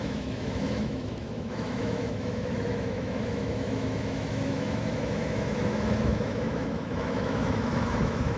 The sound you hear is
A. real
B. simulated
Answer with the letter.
B